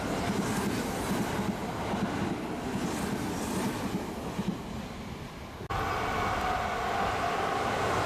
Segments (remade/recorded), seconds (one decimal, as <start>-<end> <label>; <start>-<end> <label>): 0.0-8.1 recorded